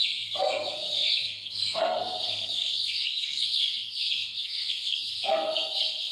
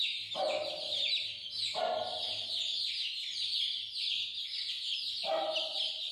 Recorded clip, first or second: second